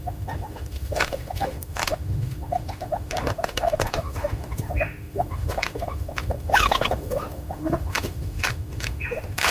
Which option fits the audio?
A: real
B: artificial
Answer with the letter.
B